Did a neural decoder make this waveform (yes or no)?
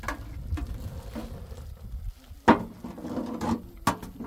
no